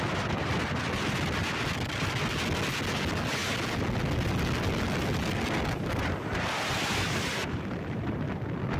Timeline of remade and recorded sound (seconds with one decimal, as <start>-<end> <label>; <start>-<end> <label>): 0.0-7.4 recorded; 7.4-8.2 remade; 8.2-8.8 recorded